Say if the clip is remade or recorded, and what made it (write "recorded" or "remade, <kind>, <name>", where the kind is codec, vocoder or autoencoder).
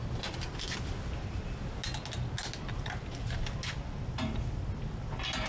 recorded